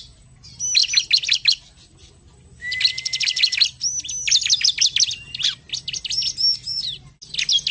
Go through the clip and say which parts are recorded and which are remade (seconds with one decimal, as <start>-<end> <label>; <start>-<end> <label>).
0.0-7.7 recorded